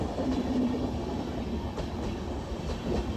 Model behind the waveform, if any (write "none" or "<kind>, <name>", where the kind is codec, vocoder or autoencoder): none